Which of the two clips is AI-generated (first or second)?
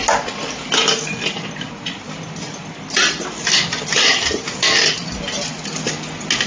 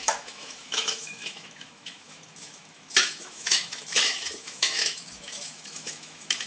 second